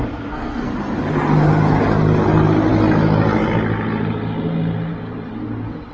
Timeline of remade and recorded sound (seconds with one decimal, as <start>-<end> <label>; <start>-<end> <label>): 0.0-0.7 remade; 0.7-5.9 recorded